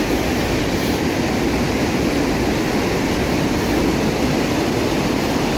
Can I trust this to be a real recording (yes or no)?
yes